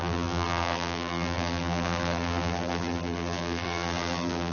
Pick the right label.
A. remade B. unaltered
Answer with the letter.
A